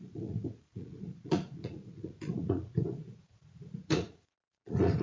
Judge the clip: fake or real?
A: fake